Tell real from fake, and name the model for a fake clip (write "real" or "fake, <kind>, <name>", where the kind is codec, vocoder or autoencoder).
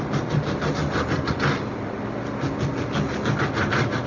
real